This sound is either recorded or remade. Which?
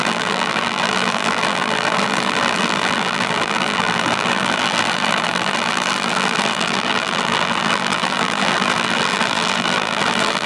remade